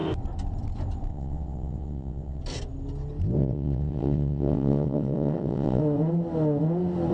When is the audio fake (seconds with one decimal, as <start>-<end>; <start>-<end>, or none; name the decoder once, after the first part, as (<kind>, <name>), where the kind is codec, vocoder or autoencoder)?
1.1-2.4 (vocoder, WaveNeXt); 3.4-5.8

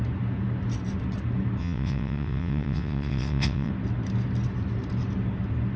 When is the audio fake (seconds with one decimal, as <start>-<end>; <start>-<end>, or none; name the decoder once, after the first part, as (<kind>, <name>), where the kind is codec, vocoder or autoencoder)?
1.6-3.7 (vocoder, WaveNeXt)

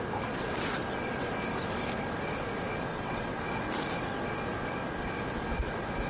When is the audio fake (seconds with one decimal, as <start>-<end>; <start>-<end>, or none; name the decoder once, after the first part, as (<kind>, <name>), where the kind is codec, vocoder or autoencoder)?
2.9-3.4 (vocoder, WaveNeXt)

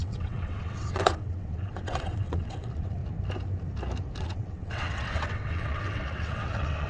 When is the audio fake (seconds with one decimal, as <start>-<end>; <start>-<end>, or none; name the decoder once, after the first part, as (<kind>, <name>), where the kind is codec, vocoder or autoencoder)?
0.0-3.0 (vocoder, WaveNeXt); 4.2-6.9

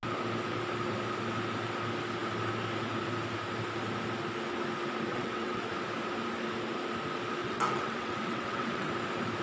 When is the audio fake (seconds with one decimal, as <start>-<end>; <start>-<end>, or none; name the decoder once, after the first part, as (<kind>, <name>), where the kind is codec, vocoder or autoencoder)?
5.1-5.7 (vocoder, WaveNeXt); 7.4-8.9

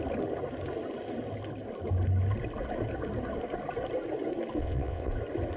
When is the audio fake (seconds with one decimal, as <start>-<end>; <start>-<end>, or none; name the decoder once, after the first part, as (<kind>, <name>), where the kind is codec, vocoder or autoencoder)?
4.6-5.1 (vocoder, WaveNeXt)

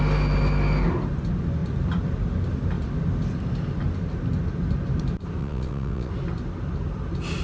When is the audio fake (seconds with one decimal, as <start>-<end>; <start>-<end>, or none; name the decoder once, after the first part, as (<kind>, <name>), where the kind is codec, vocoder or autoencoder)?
5.4-6.1 (vocoder, WaveNeXt)

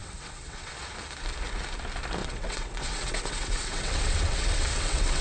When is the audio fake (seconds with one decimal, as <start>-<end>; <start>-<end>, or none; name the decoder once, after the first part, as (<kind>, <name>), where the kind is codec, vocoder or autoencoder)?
0.0-0.7 (vocoder, WaveNeXt); 2.2-5.2